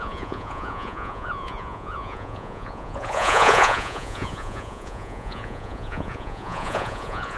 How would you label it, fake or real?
fake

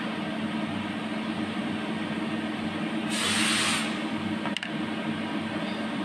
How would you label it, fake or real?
real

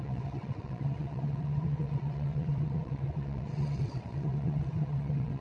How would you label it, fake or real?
fake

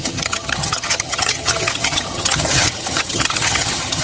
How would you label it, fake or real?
fake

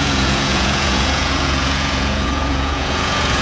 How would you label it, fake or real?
fake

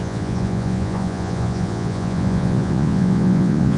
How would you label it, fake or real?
fake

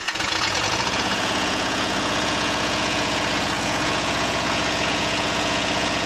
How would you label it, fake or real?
fake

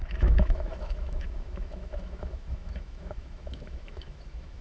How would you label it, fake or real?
fake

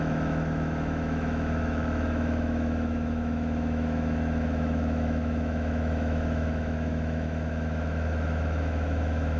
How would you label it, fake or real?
fake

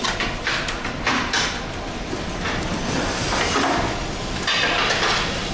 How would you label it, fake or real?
real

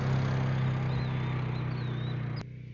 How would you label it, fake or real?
real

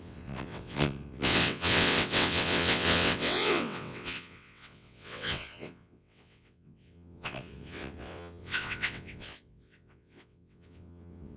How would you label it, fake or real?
fake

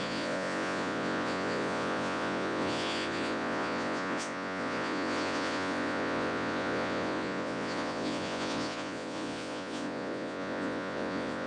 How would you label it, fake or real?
fake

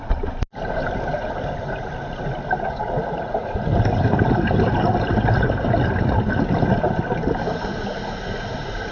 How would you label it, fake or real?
real